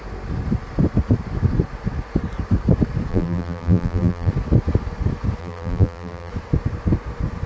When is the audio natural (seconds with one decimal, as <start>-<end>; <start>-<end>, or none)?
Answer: 0.0-3.1; 4.3-5.4; 6.3-7.5